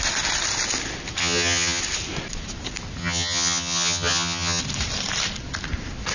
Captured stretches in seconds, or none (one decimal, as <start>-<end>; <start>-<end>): 0.0-1.2; 1.8-3.0; 4.6-6.1